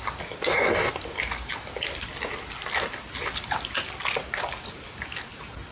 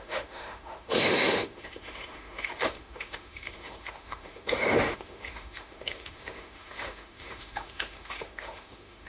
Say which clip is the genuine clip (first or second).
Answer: first